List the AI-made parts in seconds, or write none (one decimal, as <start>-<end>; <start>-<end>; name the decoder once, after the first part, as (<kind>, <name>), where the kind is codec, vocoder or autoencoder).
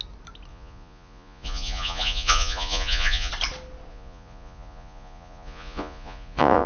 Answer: 0.5-3.3 (vocoder, Vocos); 3.9-6.7